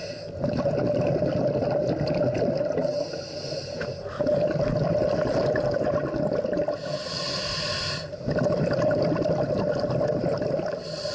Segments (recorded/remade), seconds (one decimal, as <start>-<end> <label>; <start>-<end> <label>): 0.0-11.1 recorded